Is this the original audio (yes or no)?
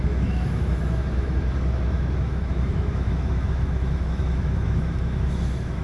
no